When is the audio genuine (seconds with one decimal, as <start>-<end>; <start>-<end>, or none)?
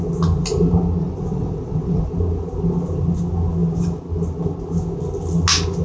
0.0-1.0; 2.1-5.8